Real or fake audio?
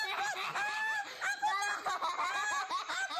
real